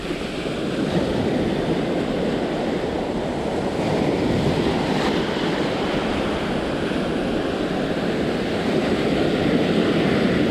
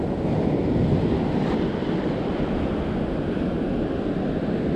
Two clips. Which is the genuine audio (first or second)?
second